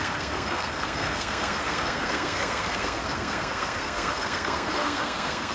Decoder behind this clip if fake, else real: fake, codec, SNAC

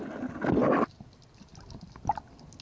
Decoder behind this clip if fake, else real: real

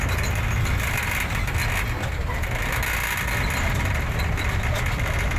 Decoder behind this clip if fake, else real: real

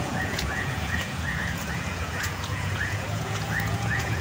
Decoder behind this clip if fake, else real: fake, vocoder, Vocos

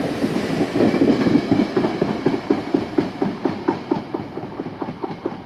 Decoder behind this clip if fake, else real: real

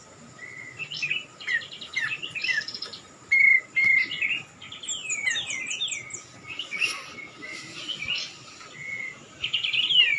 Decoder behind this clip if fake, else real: real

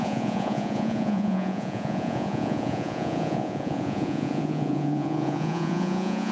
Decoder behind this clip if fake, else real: fake, vocoder, Vocos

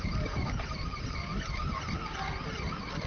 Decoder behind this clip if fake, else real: real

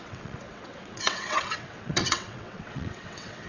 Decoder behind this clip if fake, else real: fake, vocoder, WaveNeXt